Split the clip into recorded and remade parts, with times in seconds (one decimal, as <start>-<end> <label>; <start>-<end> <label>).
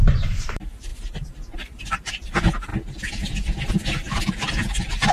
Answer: 0.0-2.7 remade; 2.7-4.1 recorded; 4.1-5.1 remade